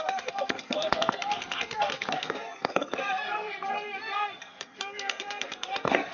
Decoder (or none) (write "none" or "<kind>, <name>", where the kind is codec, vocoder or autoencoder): codec, SNAC